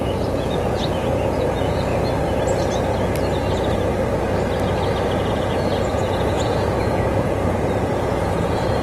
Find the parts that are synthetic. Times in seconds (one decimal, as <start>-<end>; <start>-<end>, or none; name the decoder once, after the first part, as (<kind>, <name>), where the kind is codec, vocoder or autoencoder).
0.0-1.9 (vocoder, Vocos); 5.3-8.8